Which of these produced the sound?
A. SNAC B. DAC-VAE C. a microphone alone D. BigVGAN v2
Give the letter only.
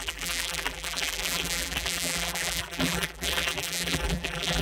D